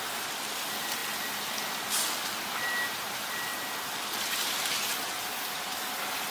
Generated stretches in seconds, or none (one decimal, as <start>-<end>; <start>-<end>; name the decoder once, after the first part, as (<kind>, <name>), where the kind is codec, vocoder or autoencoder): 0.0-1.0 (vocoder, BigVGAN v2); 3.0-3.5; 5.4-6.3